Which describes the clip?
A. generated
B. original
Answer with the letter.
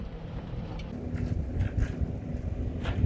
B